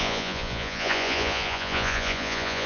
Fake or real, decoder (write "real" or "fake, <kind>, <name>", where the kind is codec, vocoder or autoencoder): fake, vocoder, Vocos